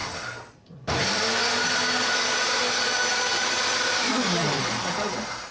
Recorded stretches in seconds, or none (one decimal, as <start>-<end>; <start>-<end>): 1.4-3.1; 4.6-5.5